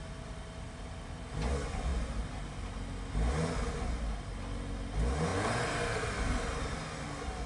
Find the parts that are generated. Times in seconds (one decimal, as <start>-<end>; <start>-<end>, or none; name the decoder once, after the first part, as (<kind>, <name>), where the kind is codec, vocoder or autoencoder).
none